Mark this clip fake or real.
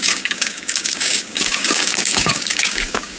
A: fake